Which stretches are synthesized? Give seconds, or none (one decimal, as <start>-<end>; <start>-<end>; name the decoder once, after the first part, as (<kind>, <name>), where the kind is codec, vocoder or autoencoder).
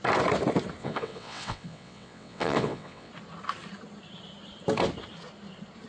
0.8-3.1 (vocoder, WaveNeXt)